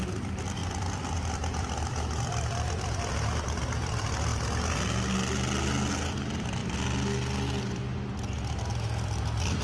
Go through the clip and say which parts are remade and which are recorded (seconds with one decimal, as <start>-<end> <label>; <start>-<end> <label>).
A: 0.0-4.3 remade; 4.3-5.9 recorded; 5.9-6.6 remade; 6.6-8.6 recorded; 8.6-9.6 remade